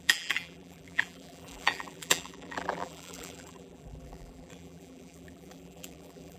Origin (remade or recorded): remade